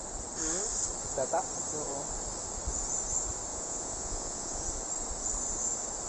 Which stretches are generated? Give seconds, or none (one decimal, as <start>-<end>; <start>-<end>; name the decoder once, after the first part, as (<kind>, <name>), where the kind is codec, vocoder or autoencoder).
3.5-4.6 (vocoder, Vocos)